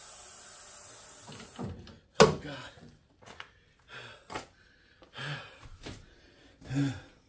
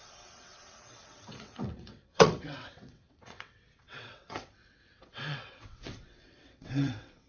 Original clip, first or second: first